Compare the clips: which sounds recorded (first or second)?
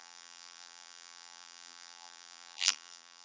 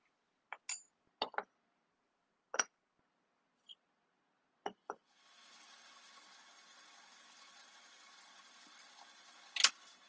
second